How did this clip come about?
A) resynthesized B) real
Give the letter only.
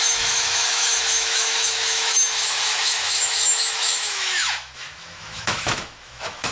A